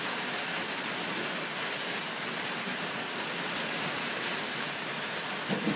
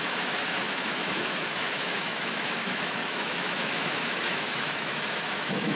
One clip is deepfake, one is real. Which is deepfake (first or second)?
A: second